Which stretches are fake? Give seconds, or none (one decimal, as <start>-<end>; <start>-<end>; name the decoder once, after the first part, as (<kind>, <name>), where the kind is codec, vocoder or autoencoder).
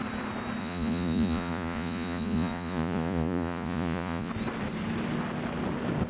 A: 0.6-4.3 (vocoder, Vocos)